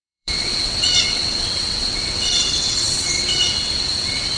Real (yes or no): no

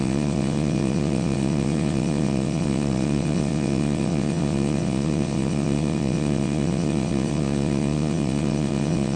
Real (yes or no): no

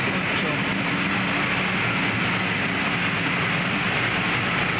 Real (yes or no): yes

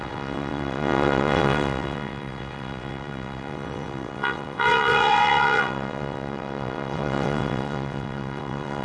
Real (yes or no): no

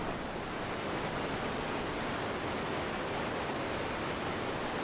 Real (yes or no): yes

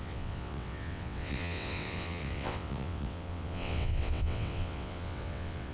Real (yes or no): no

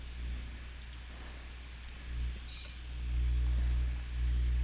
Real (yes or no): yes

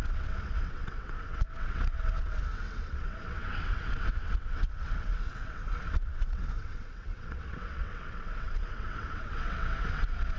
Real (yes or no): no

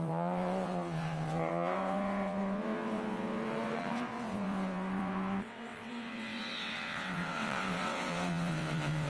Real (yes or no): no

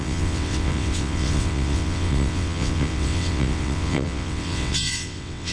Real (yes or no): no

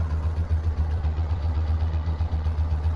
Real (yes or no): no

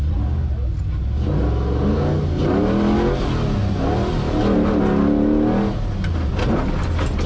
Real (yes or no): yes